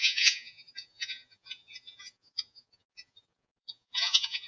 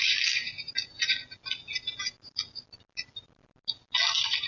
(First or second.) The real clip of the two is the second